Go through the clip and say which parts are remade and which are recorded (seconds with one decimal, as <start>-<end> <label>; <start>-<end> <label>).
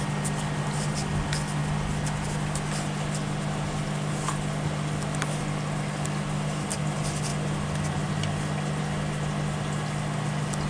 0.0-10.7 recorded